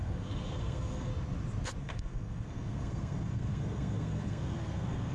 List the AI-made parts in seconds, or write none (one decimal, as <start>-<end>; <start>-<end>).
0.0-1.1; 1.8-5.1